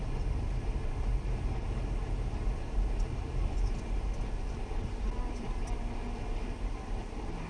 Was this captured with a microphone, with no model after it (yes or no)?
yes